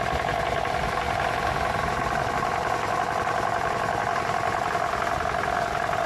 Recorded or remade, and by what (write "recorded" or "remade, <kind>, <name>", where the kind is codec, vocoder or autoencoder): recorded